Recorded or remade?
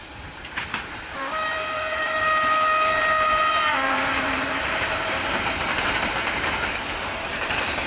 remade